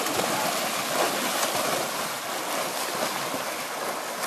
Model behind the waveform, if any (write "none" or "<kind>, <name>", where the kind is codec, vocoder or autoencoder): none